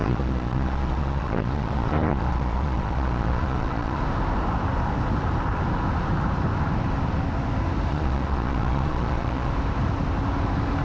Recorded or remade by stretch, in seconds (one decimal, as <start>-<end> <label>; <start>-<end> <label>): 0.0-4.0 remade; 4.0-7.9 recorded; 7.9-9.5 remade; 9.5-10.8 recorded